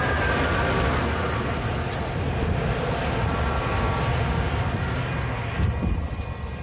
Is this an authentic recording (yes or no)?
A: yes